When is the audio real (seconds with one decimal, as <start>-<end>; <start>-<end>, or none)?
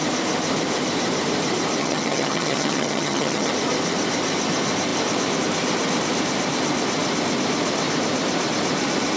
0.0-1.8; 3.5-9.2